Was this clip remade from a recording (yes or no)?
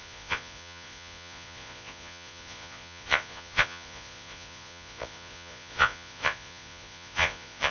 yes